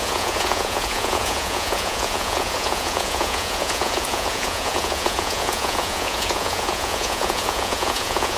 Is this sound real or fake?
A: fake